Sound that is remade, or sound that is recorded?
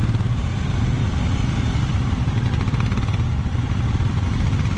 recorded